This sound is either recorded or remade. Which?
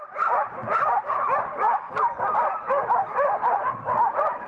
recorded